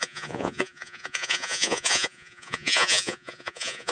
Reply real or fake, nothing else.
fake